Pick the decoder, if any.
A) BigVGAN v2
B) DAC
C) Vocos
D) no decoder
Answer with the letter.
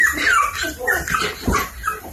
A